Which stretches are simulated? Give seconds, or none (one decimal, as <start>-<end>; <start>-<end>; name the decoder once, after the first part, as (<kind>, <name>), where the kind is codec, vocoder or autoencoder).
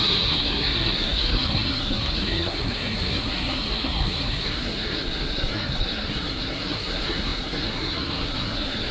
0.0-8.9 (codec, SNAC)